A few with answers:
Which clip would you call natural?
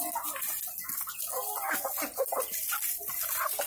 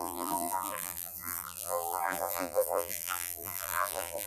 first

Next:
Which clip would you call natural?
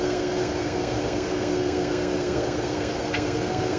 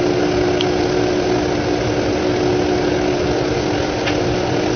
second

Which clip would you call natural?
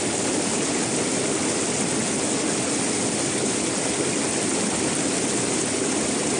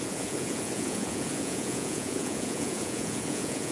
first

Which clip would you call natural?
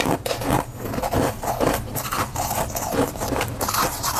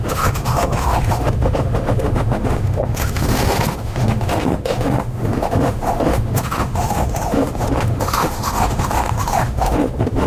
first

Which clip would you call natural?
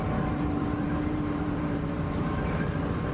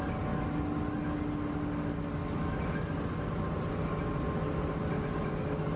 second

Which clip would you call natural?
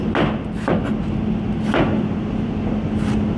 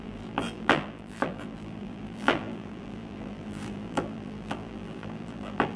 first